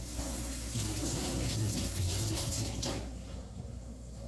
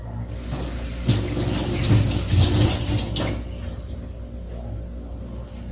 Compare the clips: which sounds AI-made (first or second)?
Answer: first